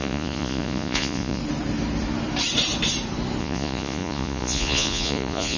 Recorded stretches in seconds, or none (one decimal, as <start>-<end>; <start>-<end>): 1.4-3.4